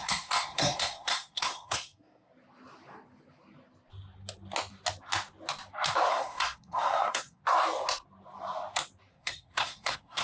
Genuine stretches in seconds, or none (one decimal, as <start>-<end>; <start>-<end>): 2.3-6.1; 7.4-9.1